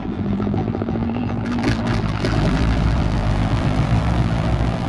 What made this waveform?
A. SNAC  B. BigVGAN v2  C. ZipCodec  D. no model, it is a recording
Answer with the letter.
B